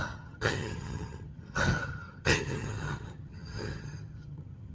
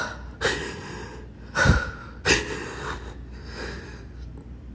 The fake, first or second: first